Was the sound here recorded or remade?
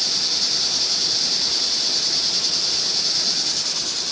recorded